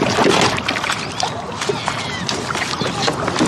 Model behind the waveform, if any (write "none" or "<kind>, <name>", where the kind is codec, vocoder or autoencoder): none